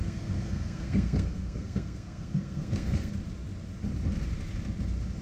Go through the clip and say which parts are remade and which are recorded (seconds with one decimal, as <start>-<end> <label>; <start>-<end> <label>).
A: 0.0-3.1 remade; 3.1-5.2 recorded